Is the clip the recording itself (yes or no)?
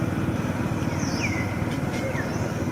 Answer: yes